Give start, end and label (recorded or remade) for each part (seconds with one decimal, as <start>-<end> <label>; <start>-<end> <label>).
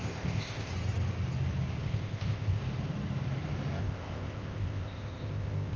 0.0-0.7 remade; 0.7-1.8 recorded; 1.8-2.6 remade; 2.6-3.8 recorded; 3.8-5.8 remade